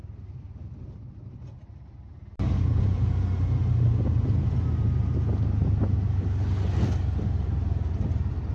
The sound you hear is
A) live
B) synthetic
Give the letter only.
A